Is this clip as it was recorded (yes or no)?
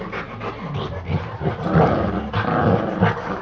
yes